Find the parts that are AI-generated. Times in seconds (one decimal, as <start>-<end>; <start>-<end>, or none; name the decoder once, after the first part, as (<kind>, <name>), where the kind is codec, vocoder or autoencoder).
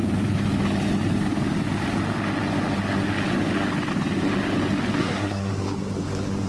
5.0-5.5 (codec, SNAC)